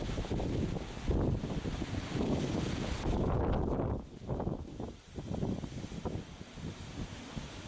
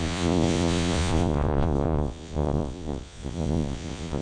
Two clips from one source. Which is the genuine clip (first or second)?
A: first